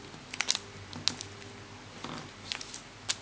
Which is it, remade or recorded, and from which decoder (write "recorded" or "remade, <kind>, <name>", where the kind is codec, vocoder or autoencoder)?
recorded